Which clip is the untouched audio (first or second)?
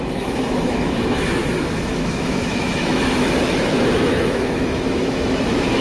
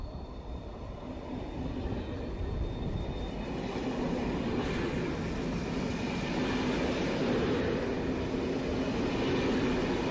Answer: second